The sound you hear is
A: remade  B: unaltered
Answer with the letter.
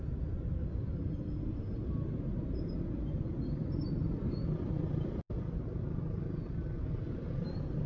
B